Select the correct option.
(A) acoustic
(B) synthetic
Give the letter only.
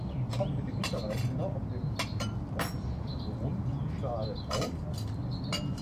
A